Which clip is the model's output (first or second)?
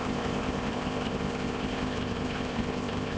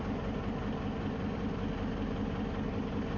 first